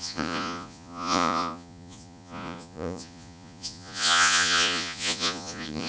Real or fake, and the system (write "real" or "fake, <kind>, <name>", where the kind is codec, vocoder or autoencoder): fake, vocoder, Vocos